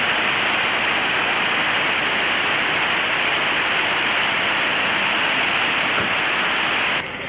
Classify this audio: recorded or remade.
recorded